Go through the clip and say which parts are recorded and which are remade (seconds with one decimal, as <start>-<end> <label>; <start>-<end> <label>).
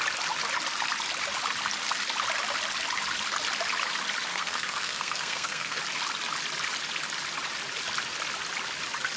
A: 0.0-4.3 recorded; 4.3-5.8 remade; 5.8-9.2 recorded